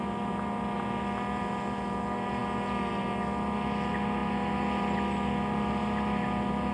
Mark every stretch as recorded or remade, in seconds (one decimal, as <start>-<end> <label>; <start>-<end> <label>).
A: 0.0-6.7 recorded